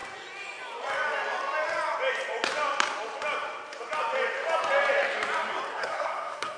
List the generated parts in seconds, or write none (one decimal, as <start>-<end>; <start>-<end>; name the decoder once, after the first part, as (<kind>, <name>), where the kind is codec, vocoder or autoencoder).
5.7-6.6 (codec, SNAC)